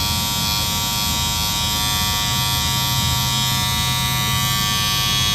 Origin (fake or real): real